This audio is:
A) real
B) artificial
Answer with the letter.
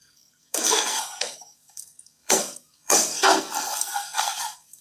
B